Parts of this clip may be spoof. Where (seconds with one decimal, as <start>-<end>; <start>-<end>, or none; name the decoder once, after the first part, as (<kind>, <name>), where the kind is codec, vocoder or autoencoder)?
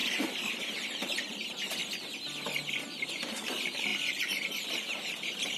0.5-1.8 (vocoder, BigVGAN v2); 3.1-5.6